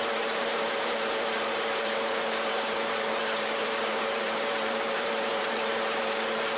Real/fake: fake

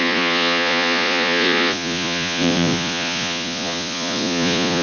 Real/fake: fake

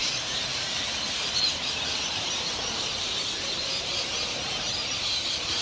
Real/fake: fake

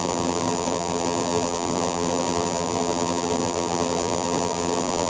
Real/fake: fake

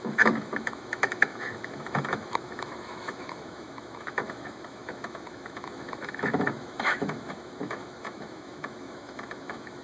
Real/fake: fake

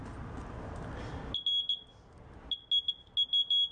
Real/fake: real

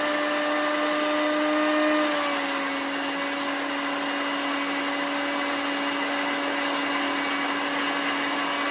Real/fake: real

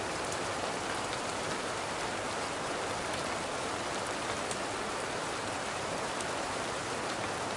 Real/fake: real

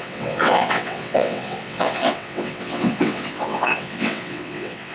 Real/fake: fake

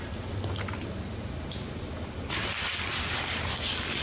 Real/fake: real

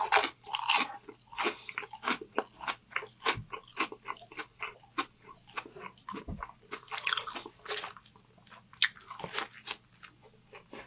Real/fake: real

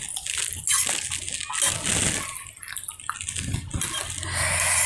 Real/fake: real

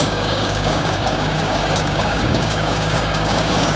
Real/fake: fake